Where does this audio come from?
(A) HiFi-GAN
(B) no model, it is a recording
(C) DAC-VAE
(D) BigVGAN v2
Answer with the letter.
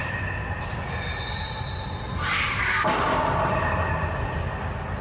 B